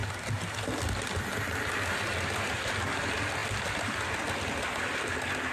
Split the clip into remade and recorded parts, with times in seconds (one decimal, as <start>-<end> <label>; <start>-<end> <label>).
0.0-5.5 recorded